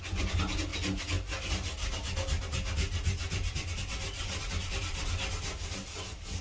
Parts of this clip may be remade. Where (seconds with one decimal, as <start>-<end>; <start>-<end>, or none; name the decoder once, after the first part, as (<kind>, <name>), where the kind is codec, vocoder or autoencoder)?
none